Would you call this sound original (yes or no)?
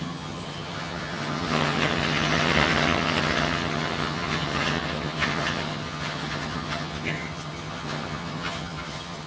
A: no